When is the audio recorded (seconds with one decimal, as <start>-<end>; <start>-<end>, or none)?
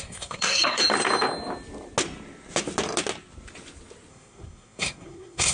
0.8-4.1